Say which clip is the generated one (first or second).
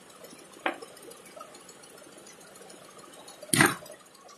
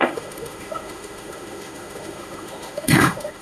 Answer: second